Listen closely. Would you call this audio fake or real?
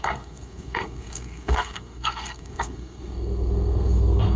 fake